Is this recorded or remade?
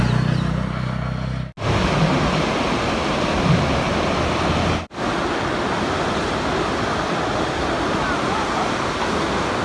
recorded